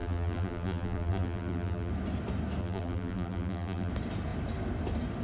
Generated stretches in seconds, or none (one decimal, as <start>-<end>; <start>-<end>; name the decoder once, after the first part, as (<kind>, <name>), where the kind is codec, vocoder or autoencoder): 0.0-1.9 (vocoder, BigVGAN v2); 2.6-3.9